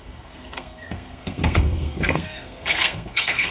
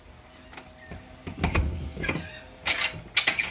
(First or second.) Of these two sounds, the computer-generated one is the first